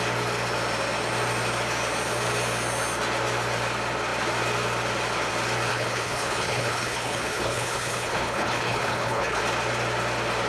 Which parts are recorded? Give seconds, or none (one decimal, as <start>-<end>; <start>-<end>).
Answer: 0.0-5.7; 9.4-10.5